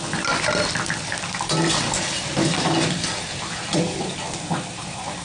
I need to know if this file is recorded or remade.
remade